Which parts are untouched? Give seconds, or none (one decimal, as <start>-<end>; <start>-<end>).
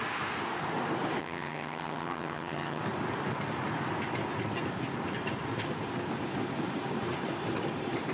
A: 0.0-1.2; 2.8-8.1